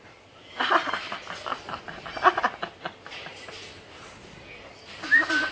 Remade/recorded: recorded